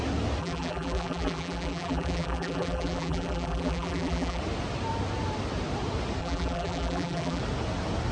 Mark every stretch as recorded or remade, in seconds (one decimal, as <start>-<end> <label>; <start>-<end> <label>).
0.0-0.4 recorded; 0.4-4.4 remade; 4.4-6.2 recorded; 6.2-7.4 remade; 7.4-8.1 recorded